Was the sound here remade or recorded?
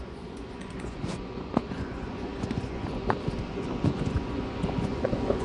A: remade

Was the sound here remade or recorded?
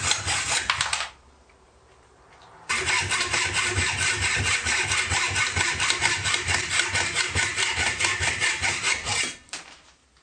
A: remade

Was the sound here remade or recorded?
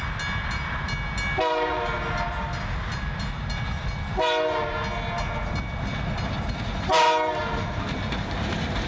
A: recorded